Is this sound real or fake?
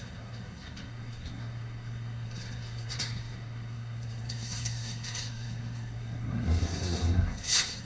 fake